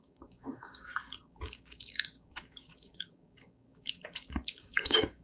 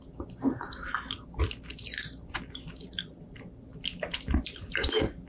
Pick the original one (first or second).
second